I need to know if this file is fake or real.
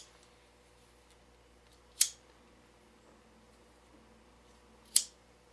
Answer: real